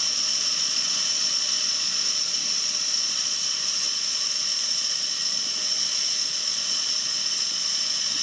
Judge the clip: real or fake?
fake